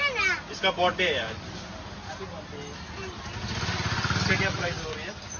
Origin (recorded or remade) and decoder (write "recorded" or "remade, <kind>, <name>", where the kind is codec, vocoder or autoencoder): recorded